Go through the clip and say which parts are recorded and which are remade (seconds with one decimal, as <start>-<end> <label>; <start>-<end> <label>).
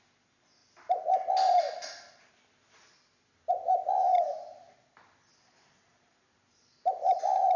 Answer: 0.0-7.6 recorded